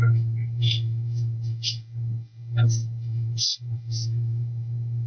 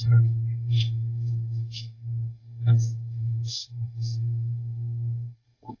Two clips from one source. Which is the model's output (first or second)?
second